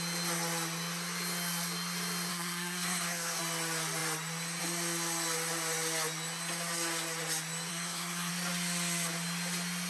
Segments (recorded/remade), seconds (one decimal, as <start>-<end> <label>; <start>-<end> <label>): 0.0-2.3 recorded; 2.3-3.4 remade; 3.4-7.7 recorded; 7.7-8.3 remade; 8.3-9.9 recorded

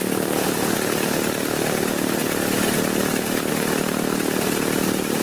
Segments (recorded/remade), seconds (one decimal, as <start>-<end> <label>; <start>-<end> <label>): 0.0-5.2 recorded

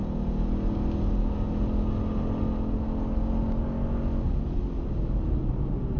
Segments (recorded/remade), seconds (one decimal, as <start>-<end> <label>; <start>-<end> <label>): 0.0-6.0 recorded

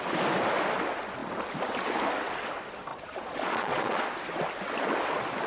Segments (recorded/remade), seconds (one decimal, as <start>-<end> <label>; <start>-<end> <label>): 0.0-2.9 recorded; 2.9-4.1 remade; 4.1-5.5 recorded

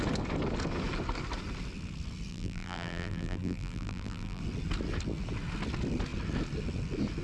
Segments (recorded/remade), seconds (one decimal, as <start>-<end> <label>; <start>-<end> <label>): 0.0-2.3 recorded; 2.3-4.4 remade; 4.4-7.2 recorded

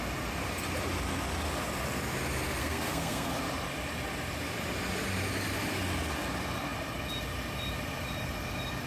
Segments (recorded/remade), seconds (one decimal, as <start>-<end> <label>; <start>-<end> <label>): 0.0-2.6 recorded; 2.6-3.3 remade; 3.3-8.9 recorded